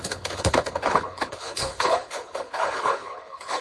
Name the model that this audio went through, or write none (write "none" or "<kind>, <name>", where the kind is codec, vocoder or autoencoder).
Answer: codec, HILCodec